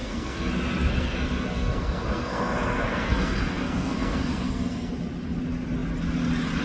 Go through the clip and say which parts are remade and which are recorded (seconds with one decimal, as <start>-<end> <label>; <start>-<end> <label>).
0.0-0.5 remade; 0.5-0.9 recorded; 0.9-4.9 remade; 4.9-6.6 recorded